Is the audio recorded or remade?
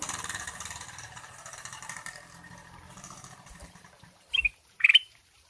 remade